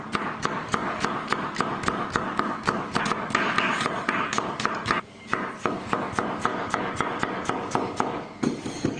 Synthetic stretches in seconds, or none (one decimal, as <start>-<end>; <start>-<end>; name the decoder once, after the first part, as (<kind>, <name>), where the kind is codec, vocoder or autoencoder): 0.0-9.0 (codec, DAC)